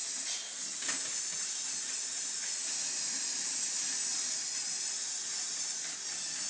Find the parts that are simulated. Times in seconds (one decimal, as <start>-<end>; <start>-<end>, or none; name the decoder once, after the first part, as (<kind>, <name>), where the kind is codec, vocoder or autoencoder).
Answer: 2.4-3.2 (vocoder, Vocos)